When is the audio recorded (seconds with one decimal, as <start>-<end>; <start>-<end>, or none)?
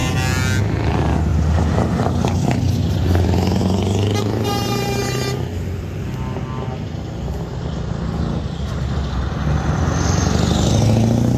0.0-1.3; 2.1-11.4